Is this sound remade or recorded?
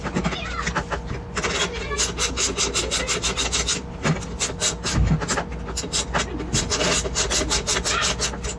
recorded